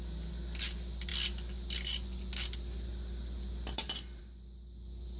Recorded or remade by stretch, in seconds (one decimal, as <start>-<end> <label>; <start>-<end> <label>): 0.0-5.2 recorded